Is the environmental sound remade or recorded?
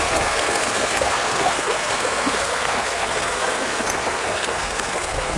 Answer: remade